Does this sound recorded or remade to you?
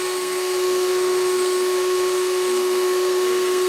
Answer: remade